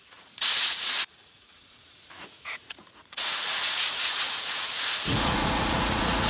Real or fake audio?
fake